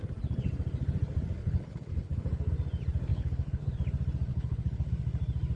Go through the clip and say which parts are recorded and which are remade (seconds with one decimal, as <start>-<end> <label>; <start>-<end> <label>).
0.0-1.4 recorded; 1.4-2.5 remade; 2.5-3.1 recorded; 3.1-3.7 remade; 3.7-4.3 recorded; 4.3-4.9 remade; 4.9-5.6 recorded